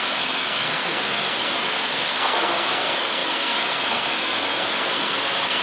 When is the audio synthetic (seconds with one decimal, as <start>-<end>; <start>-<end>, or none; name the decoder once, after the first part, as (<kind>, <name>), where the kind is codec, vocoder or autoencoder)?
0.0-5.6 (codec, SNAC)